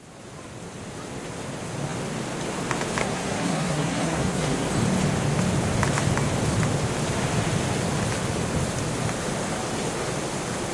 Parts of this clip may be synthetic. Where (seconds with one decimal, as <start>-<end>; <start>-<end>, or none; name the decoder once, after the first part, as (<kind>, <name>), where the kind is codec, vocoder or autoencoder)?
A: 3.0-4.7 (codec, SNAC)